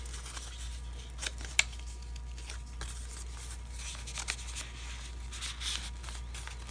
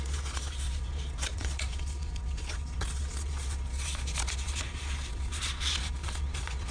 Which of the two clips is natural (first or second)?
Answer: first